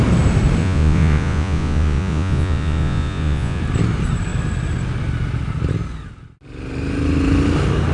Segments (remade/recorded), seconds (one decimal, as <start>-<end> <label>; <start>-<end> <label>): 0.0-0.6 recorded; 0.6-3.6 remade; 3.6-7.9 recorded